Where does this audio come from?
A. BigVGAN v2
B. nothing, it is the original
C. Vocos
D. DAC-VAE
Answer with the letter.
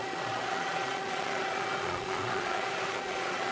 C